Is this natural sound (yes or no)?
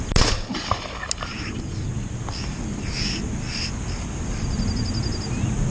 yes